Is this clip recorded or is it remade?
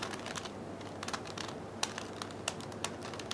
recorded